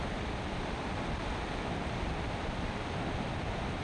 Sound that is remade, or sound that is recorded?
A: remade